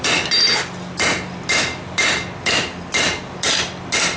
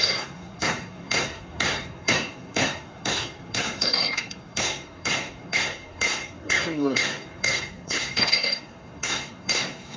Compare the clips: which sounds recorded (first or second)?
first